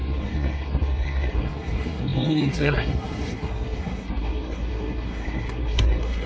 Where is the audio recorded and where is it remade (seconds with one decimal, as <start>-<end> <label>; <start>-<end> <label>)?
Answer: 0.0-6.3 remade